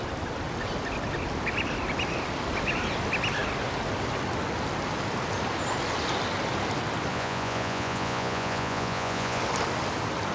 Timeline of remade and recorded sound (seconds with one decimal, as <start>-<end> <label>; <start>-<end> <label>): 0.0-7.1 recorded; 7.1-9.4 remade; 9.4-10.3 recorded